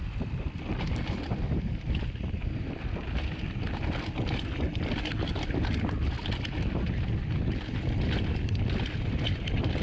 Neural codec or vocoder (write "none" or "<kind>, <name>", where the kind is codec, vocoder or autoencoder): none